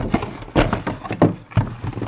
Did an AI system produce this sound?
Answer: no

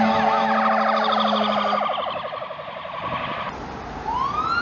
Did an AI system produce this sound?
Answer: no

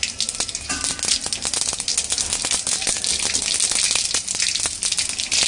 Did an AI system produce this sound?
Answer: no